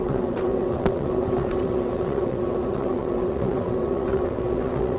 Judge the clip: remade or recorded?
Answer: remade